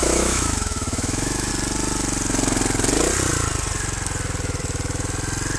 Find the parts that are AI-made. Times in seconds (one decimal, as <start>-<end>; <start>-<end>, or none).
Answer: 0.0-1.5